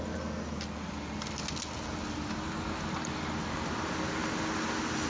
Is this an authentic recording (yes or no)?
yes